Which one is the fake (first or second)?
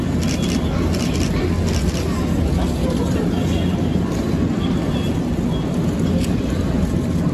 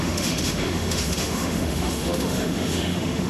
second